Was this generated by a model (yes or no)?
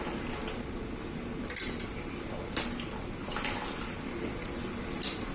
no